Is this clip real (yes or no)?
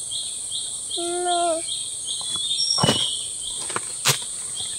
yes